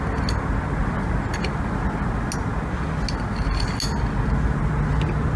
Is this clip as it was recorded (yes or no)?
yes